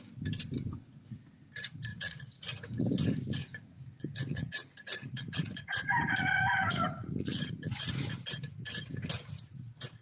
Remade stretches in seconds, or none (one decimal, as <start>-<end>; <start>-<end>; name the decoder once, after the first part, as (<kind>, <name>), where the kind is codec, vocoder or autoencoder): 1.9-2.8 (vocoder, Vocos); 3.4-7.9